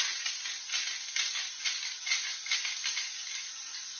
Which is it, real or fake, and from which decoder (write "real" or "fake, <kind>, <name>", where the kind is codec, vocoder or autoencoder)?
real